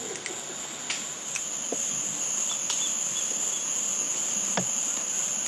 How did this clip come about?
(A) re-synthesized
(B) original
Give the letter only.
B